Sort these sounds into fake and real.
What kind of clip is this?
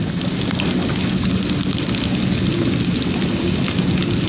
real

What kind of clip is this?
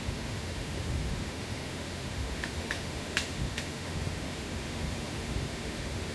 fake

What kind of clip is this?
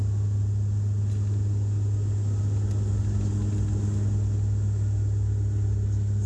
real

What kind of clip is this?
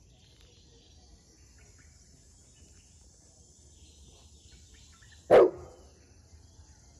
real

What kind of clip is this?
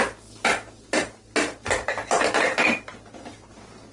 real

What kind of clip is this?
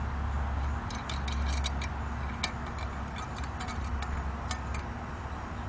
real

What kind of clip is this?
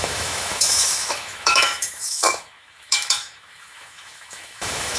fake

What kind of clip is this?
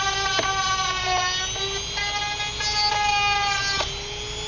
real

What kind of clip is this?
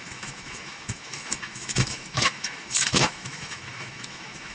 fake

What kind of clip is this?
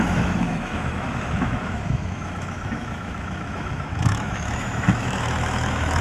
fake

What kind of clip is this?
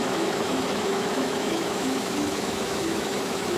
fake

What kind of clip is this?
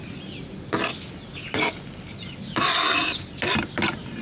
real